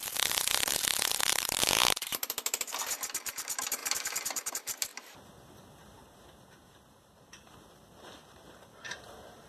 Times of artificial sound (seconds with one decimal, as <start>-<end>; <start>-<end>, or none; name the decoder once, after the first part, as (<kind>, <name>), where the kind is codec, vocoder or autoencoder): 0.0-4.9 (vocoder, BigVGAN v2); 5.7-9.5